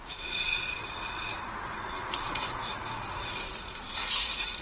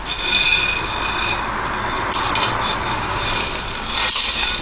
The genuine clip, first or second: second